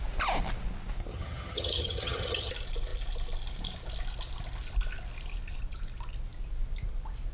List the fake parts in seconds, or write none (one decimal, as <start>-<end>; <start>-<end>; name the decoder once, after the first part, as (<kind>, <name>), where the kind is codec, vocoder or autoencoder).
1.1-2.5 (vocoder, HiFi-GAN)